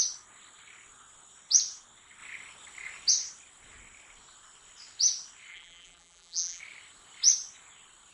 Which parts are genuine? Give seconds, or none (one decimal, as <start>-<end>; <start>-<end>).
0.0-5.5; 6.6-8.1